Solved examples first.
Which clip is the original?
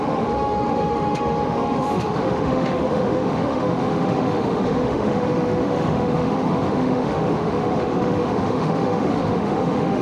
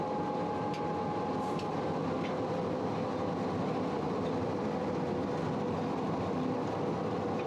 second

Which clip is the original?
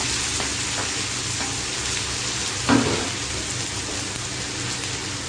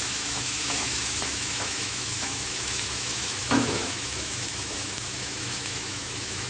first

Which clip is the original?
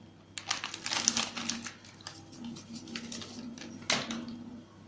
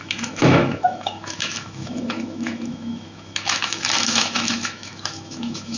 first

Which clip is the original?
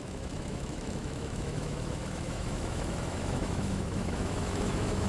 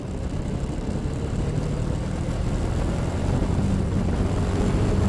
second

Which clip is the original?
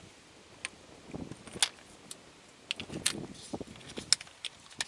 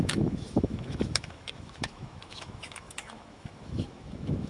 first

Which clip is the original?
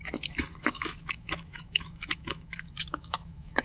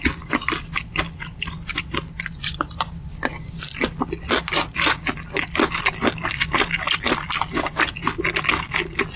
second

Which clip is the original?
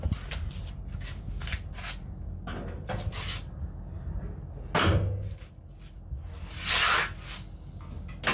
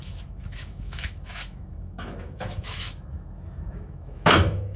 first